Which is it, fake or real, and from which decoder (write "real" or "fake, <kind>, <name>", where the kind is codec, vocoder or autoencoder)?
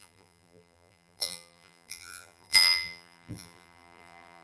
fake, vocoder, BigVGAN v2